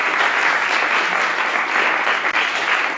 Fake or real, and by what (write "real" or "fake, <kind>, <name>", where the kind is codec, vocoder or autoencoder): real